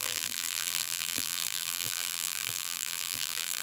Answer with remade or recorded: remade